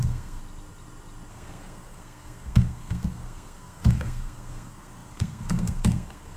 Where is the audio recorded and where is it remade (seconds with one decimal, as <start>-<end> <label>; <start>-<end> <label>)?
0.0-0.4 remade; 0.4-1.3 recorded; 1.3-6.4 remade